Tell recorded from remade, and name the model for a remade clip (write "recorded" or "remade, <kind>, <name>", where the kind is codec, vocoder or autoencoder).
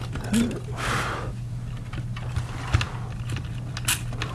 recorded